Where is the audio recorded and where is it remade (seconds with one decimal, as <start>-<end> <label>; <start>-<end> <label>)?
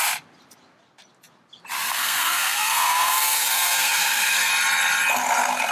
0.0-1.9 recorded; 1.9-4.5 remade; 4.5-5.7 recorded